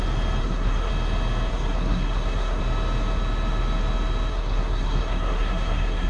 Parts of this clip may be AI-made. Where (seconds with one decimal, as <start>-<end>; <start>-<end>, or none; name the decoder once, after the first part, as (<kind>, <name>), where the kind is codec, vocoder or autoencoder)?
0.4-0.9 (codec, SNAC); 1.5-2.6; 4.3-6.1